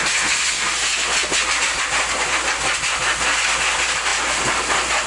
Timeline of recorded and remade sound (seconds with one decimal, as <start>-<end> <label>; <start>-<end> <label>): 0.0-5.1 recorded